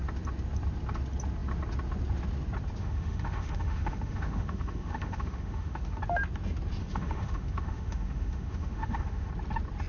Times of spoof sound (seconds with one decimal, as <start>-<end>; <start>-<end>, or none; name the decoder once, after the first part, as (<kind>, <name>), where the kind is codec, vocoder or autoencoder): 2.8-6.0 (autoencoder, DAC-VAE); 6.8-9.3